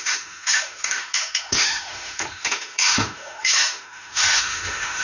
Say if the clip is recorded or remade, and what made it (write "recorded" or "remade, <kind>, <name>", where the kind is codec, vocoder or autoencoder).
remade, autoencoder, DAC-VAE